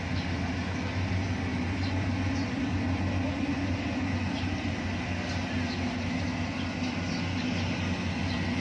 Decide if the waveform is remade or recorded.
recorded